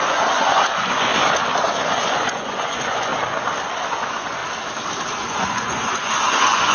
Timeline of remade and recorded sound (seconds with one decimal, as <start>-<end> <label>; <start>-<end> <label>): 0.0-1.1 remade; 1.1-1.6 recorded; 1.6-3.1 remade; 3.1-3.9 recorded; 3.9-4.4 remade; 4.4-5.3 recorded; 5.3-6.7 remade